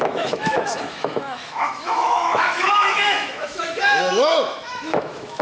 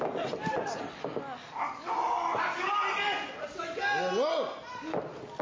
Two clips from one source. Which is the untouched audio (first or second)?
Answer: second